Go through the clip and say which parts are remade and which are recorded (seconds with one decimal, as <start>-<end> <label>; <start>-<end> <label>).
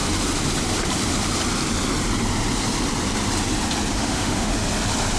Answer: 0.0-3.9 recorded; 3.9-4.5 remade; 4.5-5.2 recorded